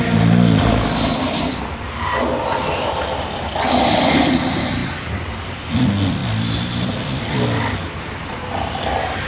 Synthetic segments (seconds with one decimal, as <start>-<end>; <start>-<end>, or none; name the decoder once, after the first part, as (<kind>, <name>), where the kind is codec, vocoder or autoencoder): none

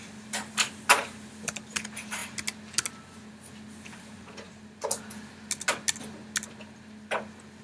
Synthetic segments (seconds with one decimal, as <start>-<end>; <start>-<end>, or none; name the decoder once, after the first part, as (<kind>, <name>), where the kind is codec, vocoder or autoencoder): none

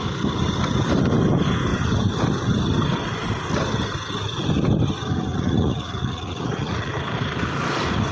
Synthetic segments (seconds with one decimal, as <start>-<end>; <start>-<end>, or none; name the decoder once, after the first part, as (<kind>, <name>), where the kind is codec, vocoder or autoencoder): 5.3-6.9 (vocoder, Vocos)

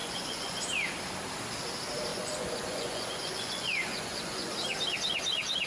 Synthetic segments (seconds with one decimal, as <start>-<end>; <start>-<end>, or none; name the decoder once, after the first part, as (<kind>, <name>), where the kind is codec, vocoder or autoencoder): 0.0-0.6 (vocoder, Vocos); 2.1-4.5

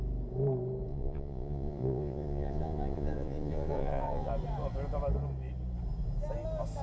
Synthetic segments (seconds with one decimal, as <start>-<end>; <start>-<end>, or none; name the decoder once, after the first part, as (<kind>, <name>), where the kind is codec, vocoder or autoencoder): 0.9-4.3 (vocoder, Vocos)

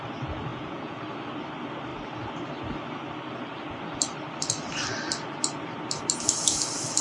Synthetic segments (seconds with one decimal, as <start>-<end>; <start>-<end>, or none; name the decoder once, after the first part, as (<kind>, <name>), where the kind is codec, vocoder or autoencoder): 0.5-1.0 (vocoder, Vocos)

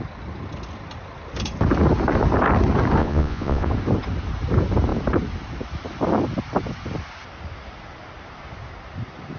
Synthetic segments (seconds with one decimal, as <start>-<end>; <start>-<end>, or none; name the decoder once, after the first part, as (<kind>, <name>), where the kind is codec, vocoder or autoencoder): 3.0-3.7 (vocoder, Vocos)

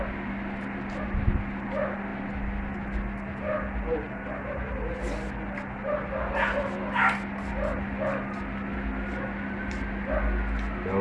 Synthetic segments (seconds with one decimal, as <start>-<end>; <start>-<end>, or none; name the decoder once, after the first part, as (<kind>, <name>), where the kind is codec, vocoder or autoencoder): none